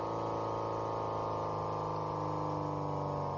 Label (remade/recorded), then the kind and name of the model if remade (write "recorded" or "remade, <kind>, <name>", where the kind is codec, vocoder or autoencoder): recorded